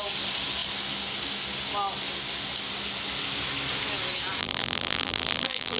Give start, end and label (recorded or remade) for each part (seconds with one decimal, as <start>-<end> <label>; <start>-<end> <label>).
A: 0.0-4.4 recorded; 4.4-5.8 remade